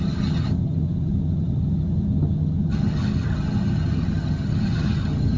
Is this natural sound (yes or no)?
no